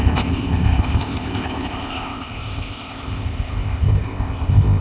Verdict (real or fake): fake